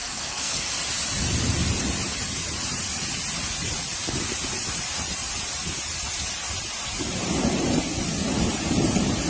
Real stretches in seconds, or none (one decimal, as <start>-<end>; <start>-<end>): 0.7-9.3